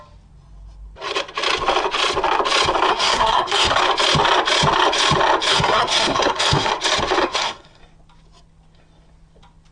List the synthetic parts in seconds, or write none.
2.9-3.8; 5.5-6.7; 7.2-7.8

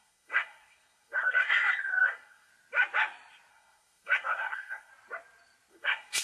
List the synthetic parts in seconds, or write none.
0.0-2.5; 3.5-4.9; 5.7-6.2